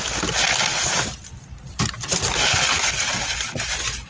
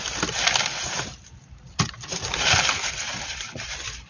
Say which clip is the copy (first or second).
second